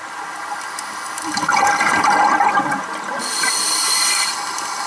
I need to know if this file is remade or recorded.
recorded